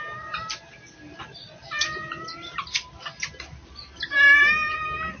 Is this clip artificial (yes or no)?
no